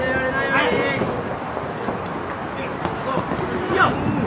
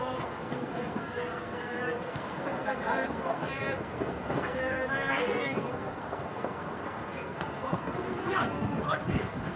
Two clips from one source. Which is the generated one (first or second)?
second